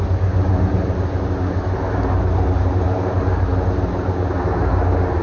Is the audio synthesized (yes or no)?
no